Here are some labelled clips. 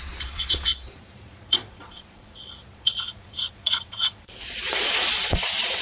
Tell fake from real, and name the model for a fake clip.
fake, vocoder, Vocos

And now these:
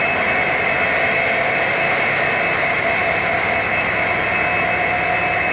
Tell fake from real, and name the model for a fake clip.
real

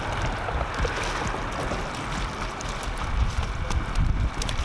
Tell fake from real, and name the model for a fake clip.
real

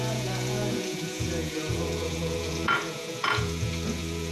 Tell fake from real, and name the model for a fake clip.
fake, vocoder, Vocos